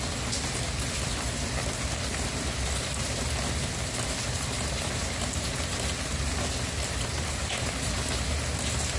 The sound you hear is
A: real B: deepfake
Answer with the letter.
A